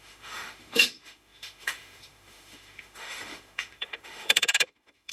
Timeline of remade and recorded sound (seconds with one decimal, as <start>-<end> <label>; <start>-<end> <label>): 0.0-5.1 remade